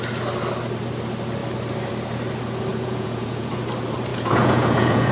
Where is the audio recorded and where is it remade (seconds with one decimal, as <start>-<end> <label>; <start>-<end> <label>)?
0.0-2.7 recorded; 2.7-3.5 remade; 3.5-4.1 recorded; 4.1-5.1 remade

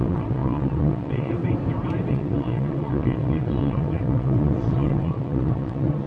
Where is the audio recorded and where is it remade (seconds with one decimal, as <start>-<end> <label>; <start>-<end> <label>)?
0.0-1.4 remade; 1.4-2.1 recorded; 2.1-6.1 remade

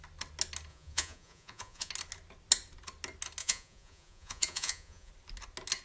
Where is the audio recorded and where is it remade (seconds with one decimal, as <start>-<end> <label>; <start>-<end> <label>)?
0.0-0.7 recorded; 0.7-1.9 remade; 1.9-3.4 recorded; 3.4-5.1 remade; 5.1-5.8 recorded

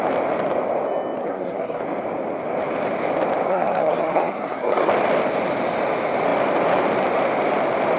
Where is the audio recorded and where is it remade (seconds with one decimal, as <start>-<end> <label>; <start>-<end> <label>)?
0.0-1.2 recorded; 1.2-1.8 remade; 1.8-3.5 recorded; 3.5-4.9 remade; 4.9-8.0 recorded

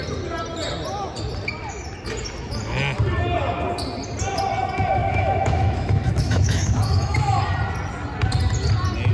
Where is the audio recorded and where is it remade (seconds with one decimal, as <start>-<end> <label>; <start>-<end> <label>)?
0.0-5.0 recorded; 5.0-7.4 remade; 7.4-9.1 recorded